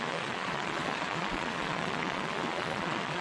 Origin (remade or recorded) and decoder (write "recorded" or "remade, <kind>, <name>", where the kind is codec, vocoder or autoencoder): remade, vocoder, Vocos